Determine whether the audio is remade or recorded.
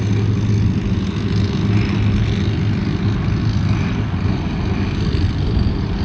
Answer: recorded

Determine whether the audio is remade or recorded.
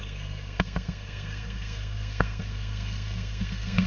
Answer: remade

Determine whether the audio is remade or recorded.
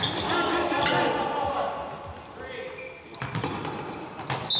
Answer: recorded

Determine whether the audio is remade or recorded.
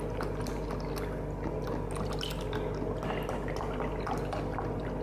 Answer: recorded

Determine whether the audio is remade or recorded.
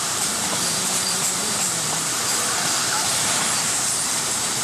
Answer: remade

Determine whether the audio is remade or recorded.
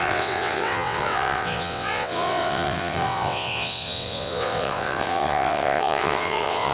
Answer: remade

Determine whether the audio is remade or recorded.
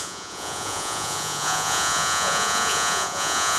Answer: remade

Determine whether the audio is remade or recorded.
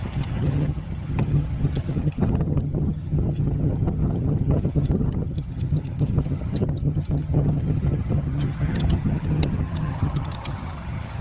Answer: remade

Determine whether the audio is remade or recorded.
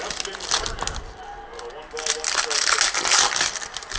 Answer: recorded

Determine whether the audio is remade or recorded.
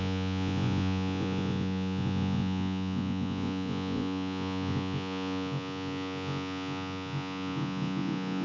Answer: remade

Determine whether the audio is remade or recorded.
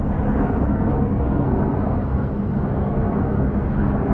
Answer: remade